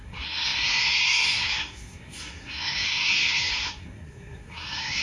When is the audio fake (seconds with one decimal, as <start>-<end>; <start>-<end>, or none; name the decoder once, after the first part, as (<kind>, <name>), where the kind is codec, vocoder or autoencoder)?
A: 0.0-5.0 (codec, SNAC)